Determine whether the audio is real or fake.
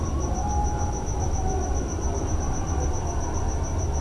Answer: real